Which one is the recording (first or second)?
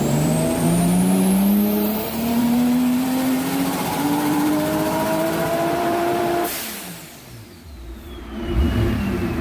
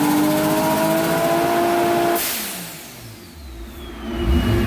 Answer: second